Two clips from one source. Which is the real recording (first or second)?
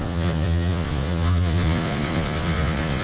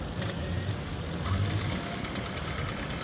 second